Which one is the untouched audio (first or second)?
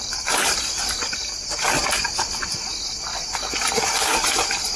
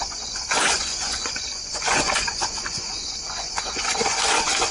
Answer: first